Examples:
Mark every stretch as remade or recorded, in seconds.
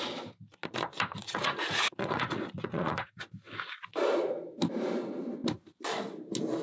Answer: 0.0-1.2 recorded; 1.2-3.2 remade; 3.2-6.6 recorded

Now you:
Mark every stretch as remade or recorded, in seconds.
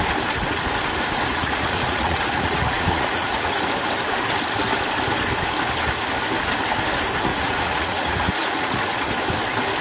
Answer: 0.0-1.3 recorded; 1.3-3.5 remade; 3.5-7.3 recorded; 7.3-9.0 remade; 9.0-9.8 recorded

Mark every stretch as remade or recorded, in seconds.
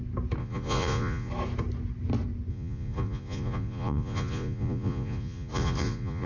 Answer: 0.0-0.4 recorded; 0.4-1.3 remade; 1.3-2.5 recorded; 2.5-6.3 remade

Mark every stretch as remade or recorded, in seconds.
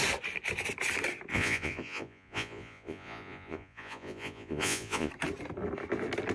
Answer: 0.0-1.3 recorded; 1.3-5.1 remade; 5.1-6.3 recorded